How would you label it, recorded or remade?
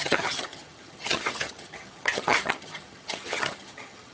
remade